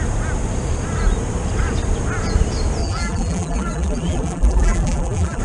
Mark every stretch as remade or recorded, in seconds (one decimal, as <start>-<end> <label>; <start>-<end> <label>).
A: 0.0-2.8 recorded; 2.8-5.4 remade